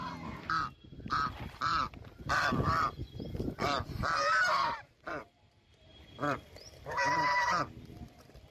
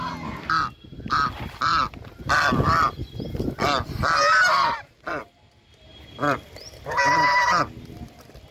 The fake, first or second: first